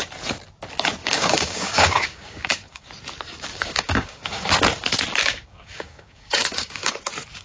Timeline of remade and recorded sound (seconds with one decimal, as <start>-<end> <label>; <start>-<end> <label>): 0.0-1.0 recorded; 1.0-2.9 remade; 2.9-3.5 recorded; 3.5-4.5 remade; 4.5-5.2 recorded; 5.2-6.9 remade; 6.9-7.4 recorded